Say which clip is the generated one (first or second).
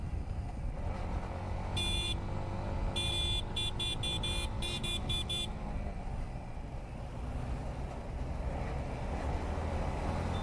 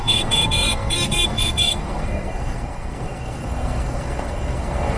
second